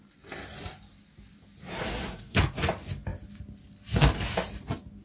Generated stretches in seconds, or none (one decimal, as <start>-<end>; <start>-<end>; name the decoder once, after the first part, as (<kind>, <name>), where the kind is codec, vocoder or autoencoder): 1.7-2.4 (codec, SNAC)